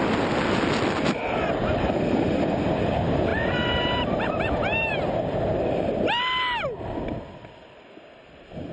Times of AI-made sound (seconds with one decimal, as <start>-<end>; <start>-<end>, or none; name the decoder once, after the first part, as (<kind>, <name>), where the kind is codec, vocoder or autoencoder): 1.2-2.0 (vocoder, BigVGAN v2); 3.3-4.9